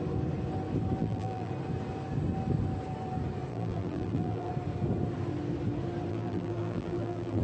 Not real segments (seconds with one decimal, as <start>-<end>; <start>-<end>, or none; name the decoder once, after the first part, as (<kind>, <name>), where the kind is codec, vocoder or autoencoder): 1.0-1.5 (vocoder, BigVGAN v2); 3.5-4.5; 6.1-7.4